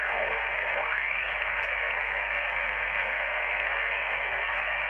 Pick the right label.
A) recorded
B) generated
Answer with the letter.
B